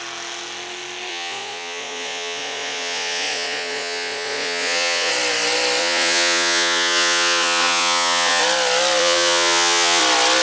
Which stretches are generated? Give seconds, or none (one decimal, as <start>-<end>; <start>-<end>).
1.1-5.1; 5.8-8.4; 9.0-10.0